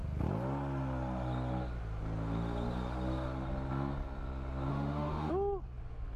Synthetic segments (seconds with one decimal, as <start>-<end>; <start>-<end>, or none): 4.7-5.3